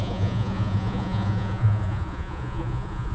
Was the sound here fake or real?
fake